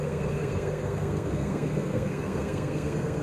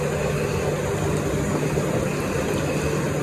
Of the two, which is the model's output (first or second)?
first